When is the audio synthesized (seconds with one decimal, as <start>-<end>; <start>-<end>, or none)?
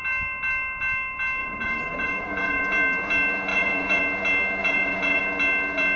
1.4-2.6; 3.5-4.0; 4.6-5.2